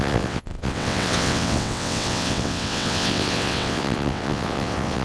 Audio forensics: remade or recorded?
remade